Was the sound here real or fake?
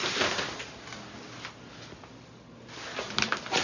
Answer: real